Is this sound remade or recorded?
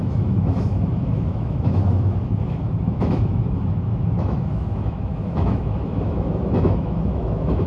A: remade